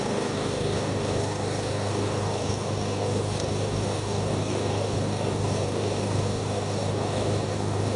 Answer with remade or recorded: remade